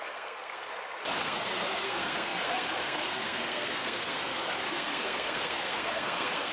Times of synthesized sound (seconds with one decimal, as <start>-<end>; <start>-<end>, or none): 0.0-0.7; 1.2-6.5